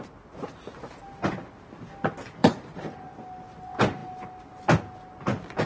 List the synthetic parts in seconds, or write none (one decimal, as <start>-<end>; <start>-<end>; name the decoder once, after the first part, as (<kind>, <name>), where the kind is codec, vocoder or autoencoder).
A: 2.4-3.1 (vocoder, BigVGAN v2)